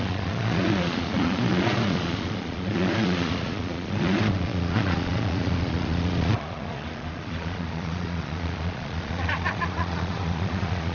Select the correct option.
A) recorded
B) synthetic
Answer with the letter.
B